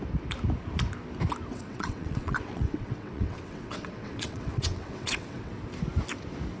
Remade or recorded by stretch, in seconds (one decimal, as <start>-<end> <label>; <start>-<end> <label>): 0.0-1.5 recorded; 1.5-5.5 remade; 5.5-6.6 recorded